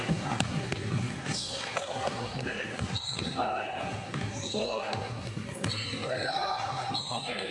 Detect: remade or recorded remade